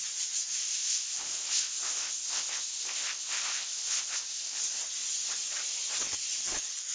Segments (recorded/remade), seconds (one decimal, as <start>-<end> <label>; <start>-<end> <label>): 0.0-0.5 recorded; 0.5-4.6 remade; 4.6-6.9 recorded